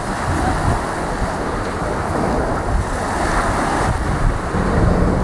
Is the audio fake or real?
real